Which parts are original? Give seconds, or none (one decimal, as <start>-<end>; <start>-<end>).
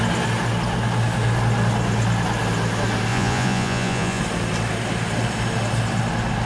0.0-3.1; 4.2-6.5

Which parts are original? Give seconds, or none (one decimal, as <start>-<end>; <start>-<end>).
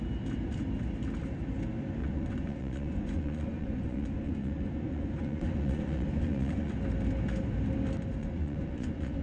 0.0-2.0; 6.7-8.2